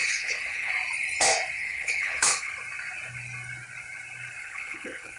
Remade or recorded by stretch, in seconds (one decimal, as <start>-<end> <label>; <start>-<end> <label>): 0.0-0.7 remade; 0.7-1.6 recorded; 1.6-2.5 remade; 2.5-4.4 recorded; 4.4-5.2 remade